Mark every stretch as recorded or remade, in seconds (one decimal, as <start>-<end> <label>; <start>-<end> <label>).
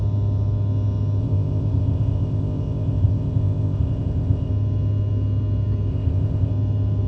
0.0-1.2 recorded; 1.2-4.5 remade; 4.5-5.9 recorded; 5.9-6.5 remade; 6.5-7.1 recorded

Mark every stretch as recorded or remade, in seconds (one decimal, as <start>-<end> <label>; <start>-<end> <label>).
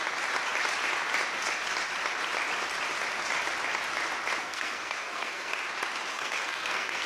0.0-4.4 recorded; 4.4-5.5 remade; 5.5-6.1 recorded; 6.1-7.1 remade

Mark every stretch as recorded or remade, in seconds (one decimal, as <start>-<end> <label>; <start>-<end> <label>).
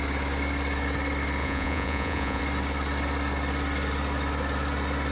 0.0-1.4 recorded; 1.4-2.4 remade; 2.4-5.1 recorded